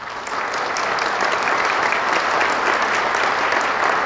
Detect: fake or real real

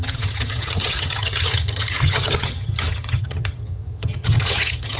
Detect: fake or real fake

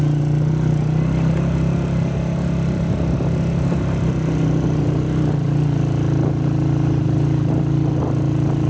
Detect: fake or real real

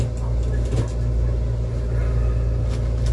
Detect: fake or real real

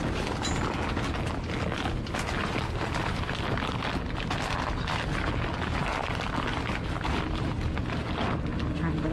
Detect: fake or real real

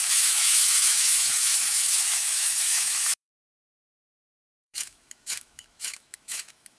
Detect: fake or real fake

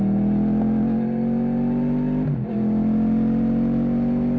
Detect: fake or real real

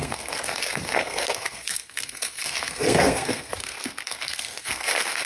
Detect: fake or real fake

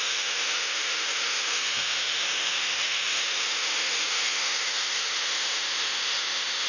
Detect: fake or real fake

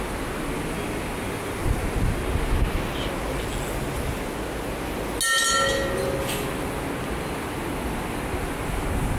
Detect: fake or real real